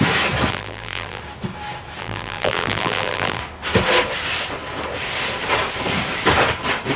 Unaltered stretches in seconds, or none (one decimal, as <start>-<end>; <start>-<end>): 0.0-0.5; 1.2-2.0; 3.4-7.0